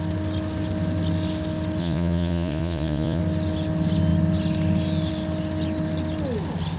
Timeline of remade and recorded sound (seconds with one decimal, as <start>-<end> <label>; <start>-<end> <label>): 0.0-1.8 recorded; 1.8-3.2 remade; 3.2-6.8 recorded

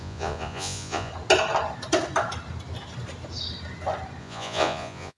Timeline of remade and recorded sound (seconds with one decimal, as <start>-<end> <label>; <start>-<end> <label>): 0.0-1.1 remade; 1.1-4.2 recorded; 4.2-5.2 remade

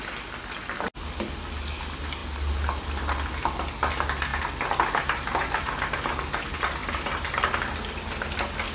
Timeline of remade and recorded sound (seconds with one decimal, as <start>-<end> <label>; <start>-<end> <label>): 0.0-8.7 recorded

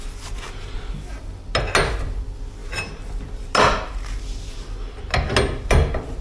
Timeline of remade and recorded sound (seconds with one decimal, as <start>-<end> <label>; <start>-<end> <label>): 0.0-6.2 recorded

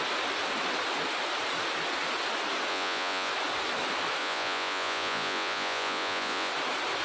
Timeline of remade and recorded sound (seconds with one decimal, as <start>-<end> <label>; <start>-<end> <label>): 0.0-2.7 recorded; 2.7-3.3 remade; 3.3-4.2 recorded; 4.2-6.5 remade; 6.5-7.0 recorded